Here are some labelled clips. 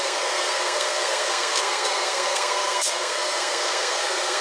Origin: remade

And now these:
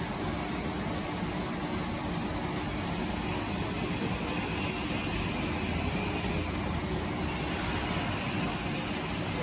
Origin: recorded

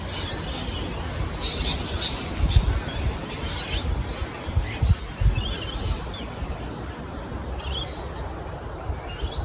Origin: recorded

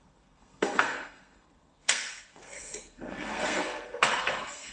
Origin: remade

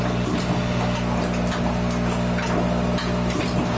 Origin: recorded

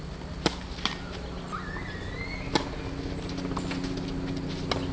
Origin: recorded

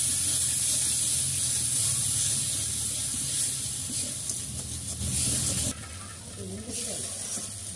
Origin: recorded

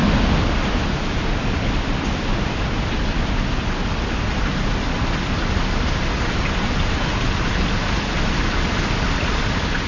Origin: recorded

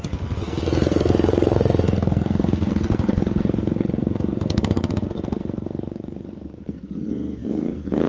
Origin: remade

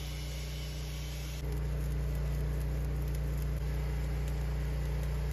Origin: recorded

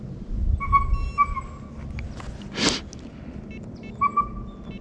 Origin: recorded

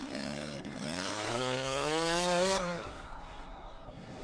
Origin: remade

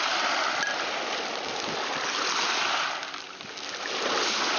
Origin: recorded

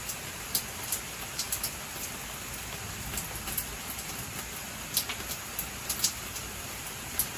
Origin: recorded